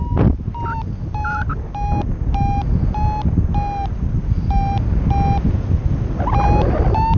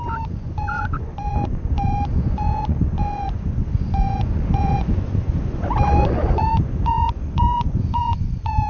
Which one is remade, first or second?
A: second